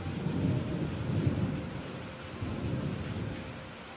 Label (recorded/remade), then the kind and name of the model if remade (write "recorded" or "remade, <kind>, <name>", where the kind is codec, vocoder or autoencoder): recorded